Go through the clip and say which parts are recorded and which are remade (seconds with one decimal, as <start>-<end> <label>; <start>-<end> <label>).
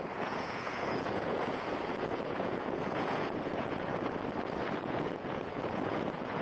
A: 0.0-3.9 remade; 3.9-4.6 recorded; 4.6-6.4 remade